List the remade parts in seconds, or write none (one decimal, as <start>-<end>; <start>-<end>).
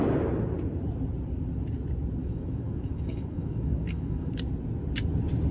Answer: 2.2-4.3